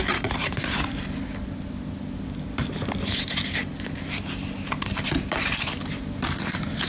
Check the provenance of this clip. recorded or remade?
recorded